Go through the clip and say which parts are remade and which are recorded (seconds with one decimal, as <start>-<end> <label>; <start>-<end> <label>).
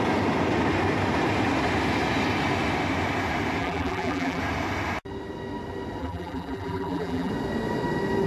0.0-3.6 recorded; 3.6-4.4 remade; 4.4-6.0 recorded; 6.0-7.3 remade; 7.3-8.3 recorded